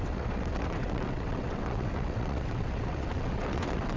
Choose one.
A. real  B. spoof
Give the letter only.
B